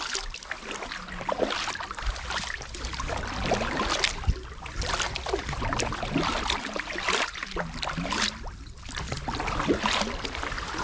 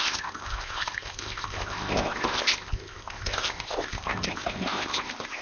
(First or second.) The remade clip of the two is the second